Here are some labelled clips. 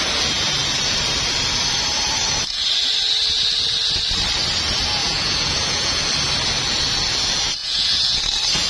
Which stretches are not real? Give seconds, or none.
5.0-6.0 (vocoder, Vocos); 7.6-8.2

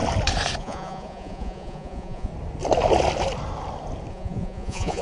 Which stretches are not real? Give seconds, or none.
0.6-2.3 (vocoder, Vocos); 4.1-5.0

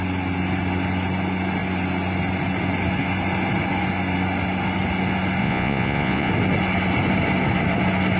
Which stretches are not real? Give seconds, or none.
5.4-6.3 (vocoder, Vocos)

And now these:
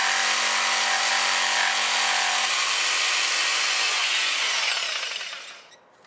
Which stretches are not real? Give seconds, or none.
3.5-4.7 (vocoder, Vocos)